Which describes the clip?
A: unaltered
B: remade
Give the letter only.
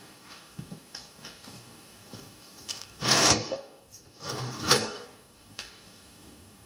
B